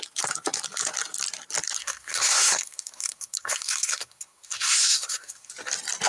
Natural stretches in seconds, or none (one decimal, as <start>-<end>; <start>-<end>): 0.0-1.8; 5.5-6.1

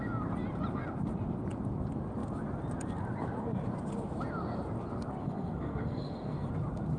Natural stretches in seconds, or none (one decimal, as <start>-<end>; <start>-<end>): 0.0-5.2; 6.5-7.0

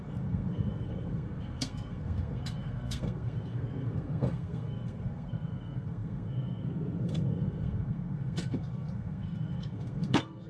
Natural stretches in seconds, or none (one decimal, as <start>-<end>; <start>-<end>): none

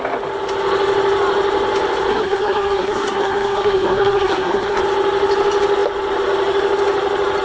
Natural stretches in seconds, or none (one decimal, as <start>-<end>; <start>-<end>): 0.0-2.1; 4.8-7.4

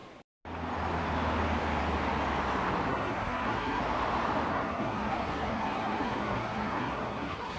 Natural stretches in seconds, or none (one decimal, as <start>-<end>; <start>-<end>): 0.0-2.9; 3.8-4.5